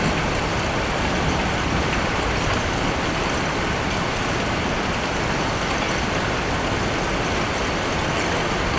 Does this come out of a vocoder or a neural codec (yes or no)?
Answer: no